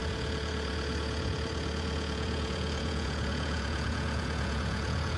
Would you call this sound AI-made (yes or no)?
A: yes